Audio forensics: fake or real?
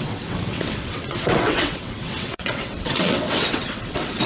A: fake